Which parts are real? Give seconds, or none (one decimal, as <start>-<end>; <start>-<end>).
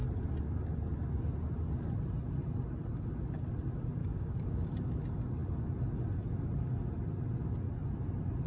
0.0-4.0; 4.7-8.5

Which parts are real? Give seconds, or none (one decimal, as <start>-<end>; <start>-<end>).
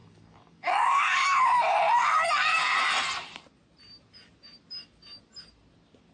1.3-6.1